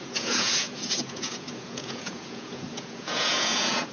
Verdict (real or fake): fake